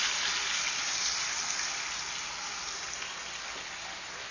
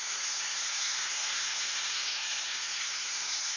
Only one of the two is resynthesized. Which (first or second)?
second